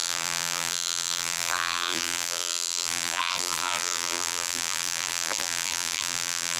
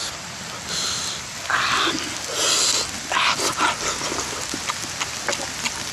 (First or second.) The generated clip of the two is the first